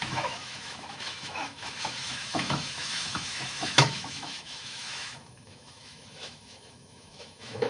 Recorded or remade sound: remade